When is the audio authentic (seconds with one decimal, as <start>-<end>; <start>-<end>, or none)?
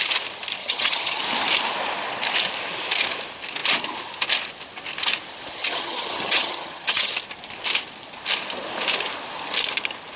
0.0-0.6; 1.2-5.6; 7.1-10.2